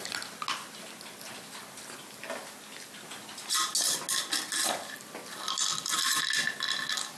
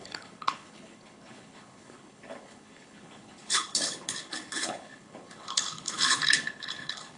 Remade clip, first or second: second